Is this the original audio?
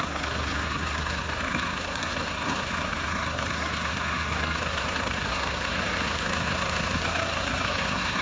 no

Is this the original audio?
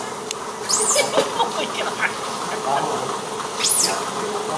yes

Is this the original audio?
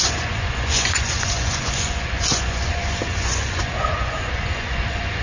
no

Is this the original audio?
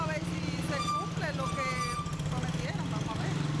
yes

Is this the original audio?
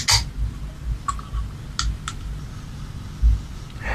yes